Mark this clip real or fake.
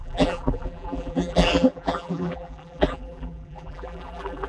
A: fake